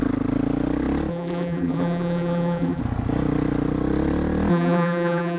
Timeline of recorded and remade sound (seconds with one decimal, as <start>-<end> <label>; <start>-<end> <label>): 0.0-1.1 recorded; 1.1-2.8 remade; 2.8-4.5 recorded; 4.5-5.4 remade